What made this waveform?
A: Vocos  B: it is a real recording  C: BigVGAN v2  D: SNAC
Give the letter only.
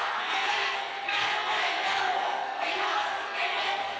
D